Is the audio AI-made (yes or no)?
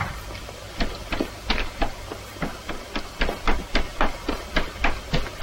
no